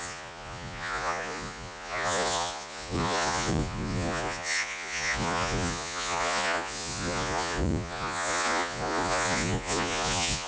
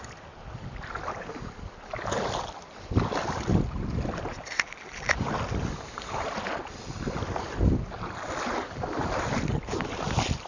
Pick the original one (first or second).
second